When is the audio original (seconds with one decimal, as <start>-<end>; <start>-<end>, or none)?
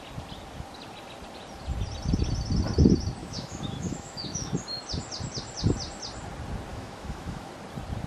0.0-3.2; 4.5-6.7; 7.5-8.1